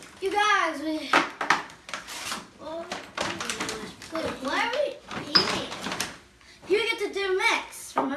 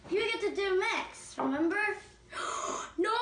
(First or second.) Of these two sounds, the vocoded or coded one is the first